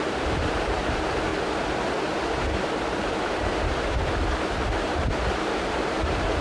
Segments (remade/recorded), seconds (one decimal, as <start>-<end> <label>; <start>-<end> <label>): 0.0-1.3 remade; 1.3-2.6 recorded; 2.6-4.0 remade; 4.0-4.7 recorded; 4.7-6.4 remade